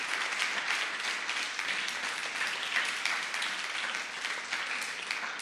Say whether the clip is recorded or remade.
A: recorded